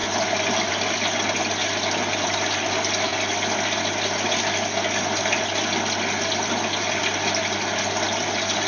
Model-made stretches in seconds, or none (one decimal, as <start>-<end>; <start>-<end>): none